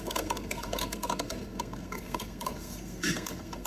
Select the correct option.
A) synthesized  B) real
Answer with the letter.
A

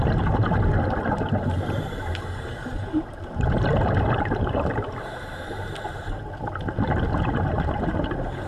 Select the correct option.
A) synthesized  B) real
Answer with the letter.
B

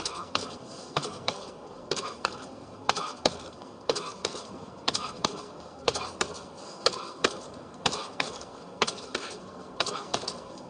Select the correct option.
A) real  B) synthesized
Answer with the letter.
B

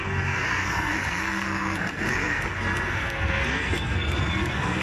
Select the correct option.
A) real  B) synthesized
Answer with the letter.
B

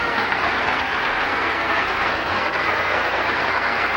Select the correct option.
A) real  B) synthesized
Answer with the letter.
B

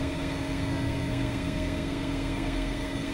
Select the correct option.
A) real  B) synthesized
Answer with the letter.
B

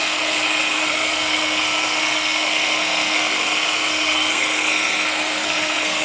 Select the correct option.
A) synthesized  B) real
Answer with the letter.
A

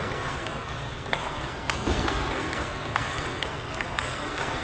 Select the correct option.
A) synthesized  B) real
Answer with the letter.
A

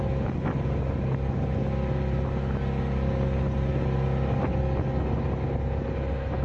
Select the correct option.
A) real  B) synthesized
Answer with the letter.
A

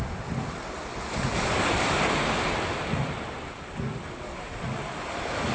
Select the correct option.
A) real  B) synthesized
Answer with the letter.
A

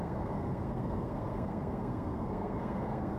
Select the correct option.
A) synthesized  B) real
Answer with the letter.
A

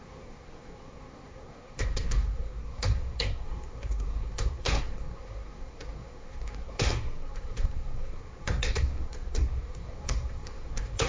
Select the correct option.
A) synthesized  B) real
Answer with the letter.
A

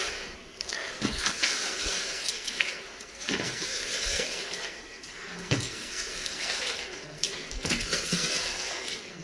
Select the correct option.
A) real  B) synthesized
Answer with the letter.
B